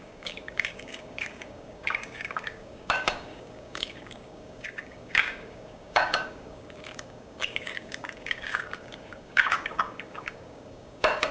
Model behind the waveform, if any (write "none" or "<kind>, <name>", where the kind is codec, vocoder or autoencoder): codec, DAC